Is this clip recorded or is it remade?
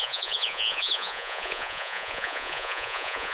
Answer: remade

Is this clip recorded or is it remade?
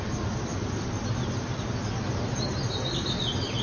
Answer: recorded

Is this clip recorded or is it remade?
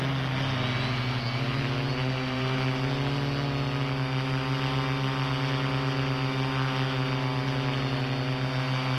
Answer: recorded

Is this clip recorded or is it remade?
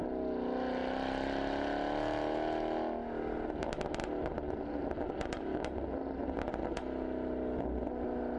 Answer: recorded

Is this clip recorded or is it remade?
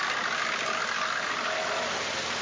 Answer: recorded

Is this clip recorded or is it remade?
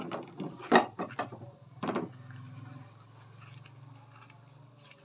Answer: recorded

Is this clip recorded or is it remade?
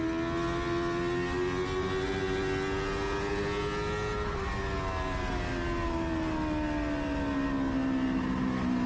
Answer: recorded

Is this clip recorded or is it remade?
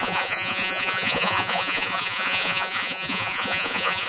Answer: remade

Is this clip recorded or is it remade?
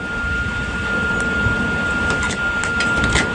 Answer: recorded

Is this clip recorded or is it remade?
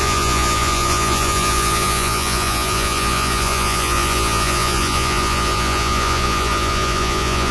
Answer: remade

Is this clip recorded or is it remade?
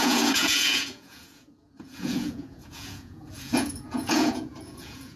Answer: remade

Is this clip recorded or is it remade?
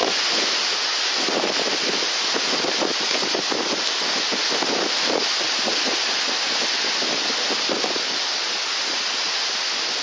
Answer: recorded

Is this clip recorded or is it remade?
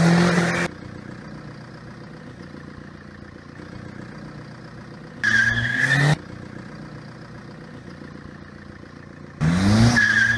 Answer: recorded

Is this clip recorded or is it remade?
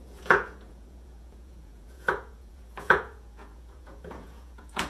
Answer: remade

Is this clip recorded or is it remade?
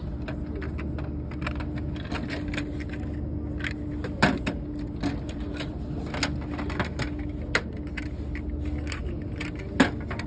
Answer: recorded